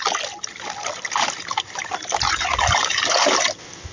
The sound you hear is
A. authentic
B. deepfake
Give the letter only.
A